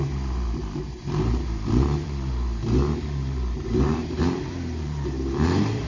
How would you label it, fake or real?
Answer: fake